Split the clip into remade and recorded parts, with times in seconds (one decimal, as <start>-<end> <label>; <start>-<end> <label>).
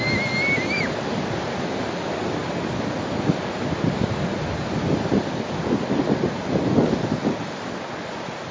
0.0-8.5 recorded